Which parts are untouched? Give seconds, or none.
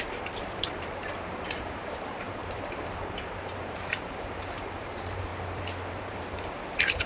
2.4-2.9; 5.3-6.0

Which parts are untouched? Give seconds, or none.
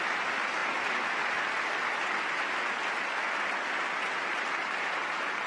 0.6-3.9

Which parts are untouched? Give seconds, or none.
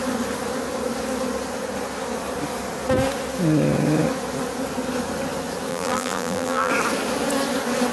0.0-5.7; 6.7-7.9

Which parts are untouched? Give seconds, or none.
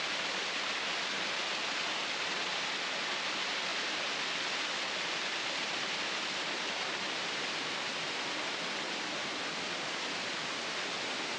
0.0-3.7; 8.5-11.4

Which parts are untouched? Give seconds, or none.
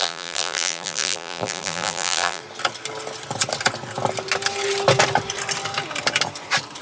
2.4-6.8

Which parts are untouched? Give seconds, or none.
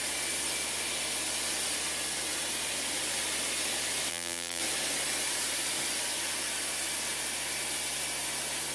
0.0-4.1; 4.6-8.7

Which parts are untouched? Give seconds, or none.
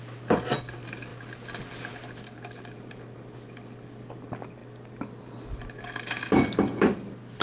0.0-7.4